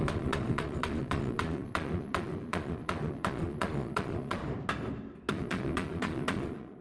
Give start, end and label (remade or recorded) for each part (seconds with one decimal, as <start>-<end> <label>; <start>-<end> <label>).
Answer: 0.0-4.4 remade; 4.4-5.3 recorded; 5.3-6.8 remade